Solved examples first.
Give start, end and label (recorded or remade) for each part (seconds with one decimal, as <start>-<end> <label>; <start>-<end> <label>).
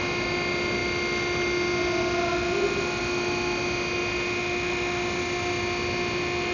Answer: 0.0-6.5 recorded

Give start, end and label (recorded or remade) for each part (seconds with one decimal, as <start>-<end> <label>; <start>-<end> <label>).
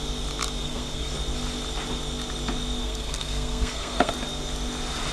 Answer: 0.0-0.6 recorded; 0.6-1.1 remade; 1.1-2.8 recorded; 2.8-4.1 remade; 4.1-5.1 recorded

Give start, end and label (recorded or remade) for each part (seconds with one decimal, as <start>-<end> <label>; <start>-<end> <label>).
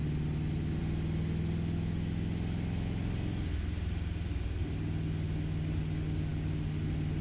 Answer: 0.0-7.2 recorded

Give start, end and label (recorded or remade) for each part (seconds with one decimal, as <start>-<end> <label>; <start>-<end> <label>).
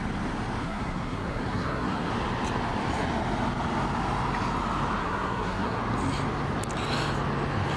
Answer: 0.0-0.6 recorded; 0.6-2.1 remade; 2.1-5.0 recorded; 5.0-5.8 remade; 5.8-7.8 recorded